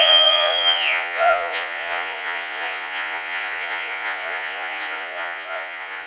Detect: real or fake fake